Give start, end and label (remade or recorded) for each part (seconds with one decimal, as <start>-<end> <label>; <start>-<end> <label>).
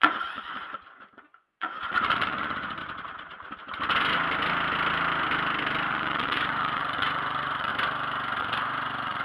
0.0-2.8 remade; 2.8-5.9 recorded; 5.9-7.7 remade; 7.7-8.4 recorded; 8.4-9.2 remade